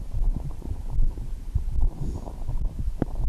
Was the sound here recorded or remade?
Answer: remade